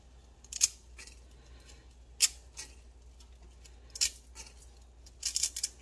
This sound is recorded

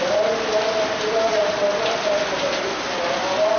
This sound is recorded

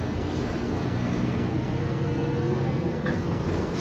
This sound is remade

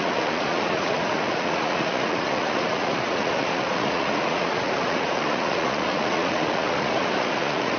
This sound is remade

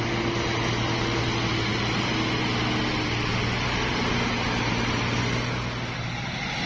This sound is recorded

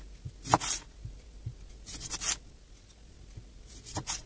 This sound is recorded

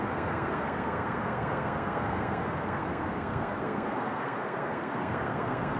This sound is remade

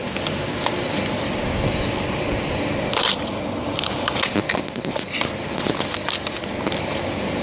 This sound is recorded